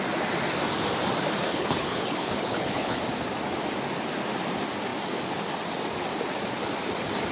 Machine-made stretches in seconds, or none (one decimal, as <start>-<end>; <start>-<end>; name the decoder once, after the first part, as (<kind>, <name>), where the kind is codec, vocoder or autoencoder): 1.5-3.0 (codec, HILCodec)